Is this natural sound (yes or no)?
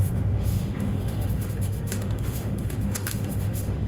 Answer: no